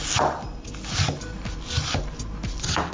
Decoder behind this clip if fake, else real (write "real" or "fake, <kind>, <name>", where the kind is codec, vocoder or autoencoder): real